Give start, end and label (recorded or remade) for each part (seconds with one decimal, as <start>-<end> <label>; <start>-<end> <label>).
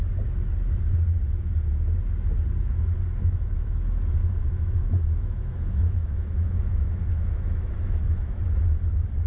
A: 0.0-4.2 recorded; 4.2-8.4 remade; 8.4-9.3 recorded